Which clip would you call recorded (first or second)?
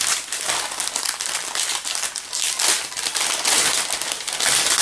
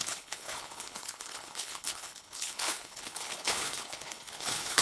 first